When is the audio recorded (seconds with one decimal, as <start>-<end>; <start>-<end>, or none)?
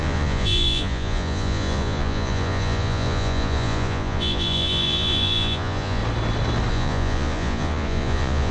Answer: 6.0-6.7